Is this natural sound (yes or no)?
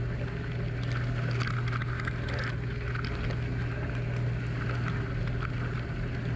yes